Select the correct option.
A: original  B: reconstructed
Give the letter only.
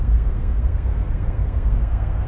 B